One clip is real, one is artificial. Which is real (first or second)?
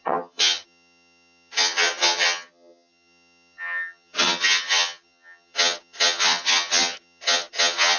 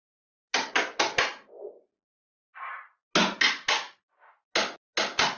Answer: second